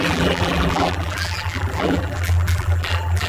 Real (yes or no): no